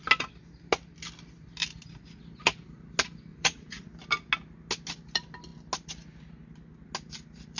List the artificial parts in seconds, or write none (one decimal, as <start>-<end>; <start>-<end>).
3.3-3.9